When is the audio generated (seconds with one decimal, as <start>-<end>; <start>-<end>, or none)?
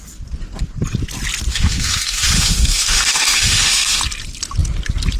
1.5-4.0